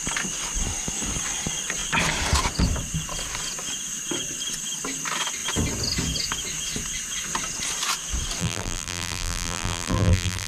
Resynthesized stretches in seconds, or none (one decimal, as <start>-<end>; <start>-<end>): 8.4-10.5